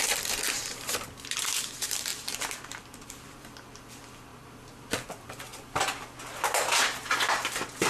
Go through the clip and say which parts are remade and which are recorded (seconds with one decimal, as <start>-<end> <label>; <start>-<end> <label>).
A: 0.0-2.1 remade; 2.1-2.7 recorded; 2.7-4.3 remade; 4.3-4.9 recorded; 4.9-5.5 remade; 5.5-6.3 recorded; 6.3-7.9 remade